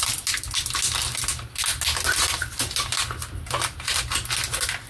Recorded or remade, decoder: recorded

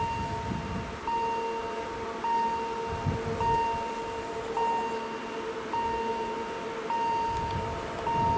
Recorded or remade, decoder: recorded